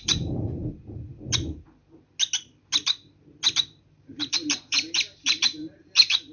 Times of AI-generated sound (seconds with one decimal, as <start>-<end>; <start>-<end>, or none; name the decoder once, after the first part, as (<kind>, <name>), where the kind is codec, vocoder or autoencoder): 0.0-0.6 (vocoder, BigVGAN v2); 3.9-6.3